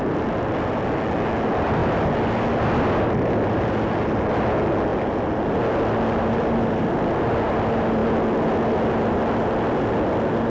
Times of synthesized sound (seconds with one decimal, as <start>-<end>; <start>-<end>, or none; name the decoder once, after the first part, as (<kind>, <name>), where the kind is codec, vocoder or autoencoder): none